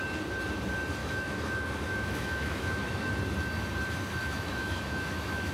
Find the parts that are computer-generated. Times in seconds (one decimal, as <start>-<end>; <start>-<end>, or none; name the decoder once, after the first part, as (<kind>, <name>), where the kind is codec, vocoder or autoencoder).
1.0-3.1 (autoencoder, DAC-VAE); 4.2-5.5